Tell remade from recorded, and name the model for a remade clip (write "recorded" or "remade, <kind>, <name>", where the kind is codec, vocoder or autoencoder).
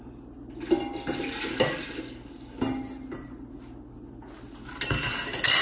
recorded